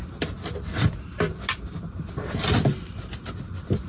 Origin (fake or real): real